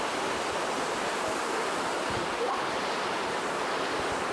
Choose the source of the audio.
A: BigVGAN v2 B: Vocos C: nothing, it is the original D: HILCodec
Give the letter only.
C